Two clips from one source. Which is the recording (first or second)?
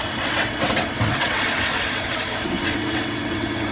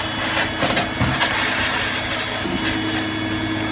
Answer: second